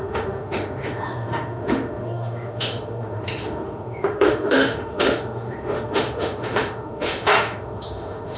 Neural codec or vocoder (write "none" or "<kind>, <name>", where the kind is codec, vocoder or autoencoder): autoencoder, DAC-VAE